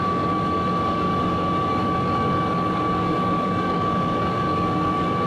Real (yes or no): no